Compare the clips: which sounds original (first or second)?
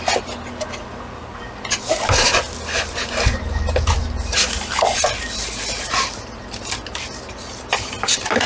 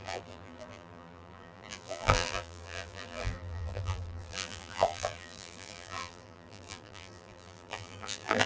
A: first